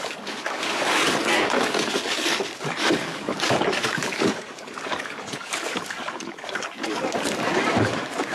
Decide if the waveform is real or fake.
fake